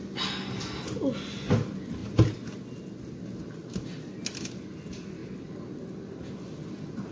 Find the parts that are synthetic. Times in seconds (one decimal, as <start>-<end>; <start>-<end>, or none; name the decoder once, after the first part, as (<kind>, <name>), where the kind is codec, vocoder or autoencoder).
none